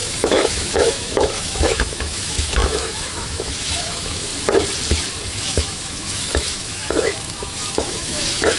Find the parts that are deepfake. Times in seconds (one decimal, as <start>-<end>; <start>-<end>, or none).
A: 0.0-4.3; 5.3-8.6